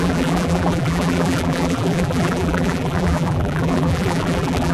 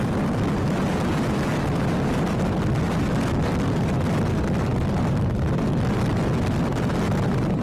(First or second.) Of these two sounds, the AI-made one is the first